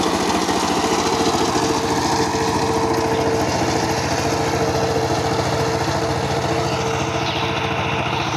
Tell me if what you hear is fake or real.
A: real